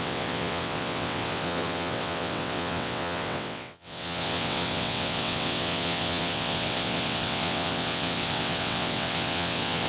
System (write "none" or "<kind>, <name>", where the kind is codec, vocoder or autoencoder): vocoder, WaveNeXt